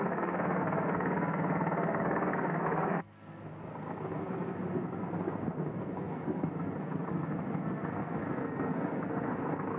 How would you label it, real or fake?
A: fake